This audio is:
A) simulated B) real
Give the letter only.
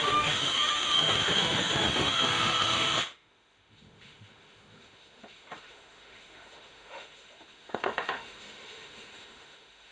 A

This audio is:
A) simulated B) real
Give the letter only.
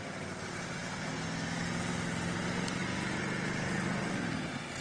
B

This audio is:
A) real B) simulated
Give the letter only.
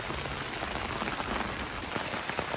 A